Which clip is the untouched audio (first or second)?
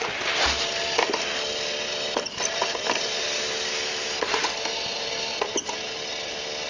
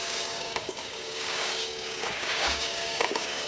first